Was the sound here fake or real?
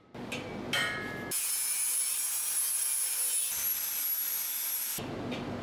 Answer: real